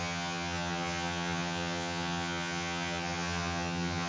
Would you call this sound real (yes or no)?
no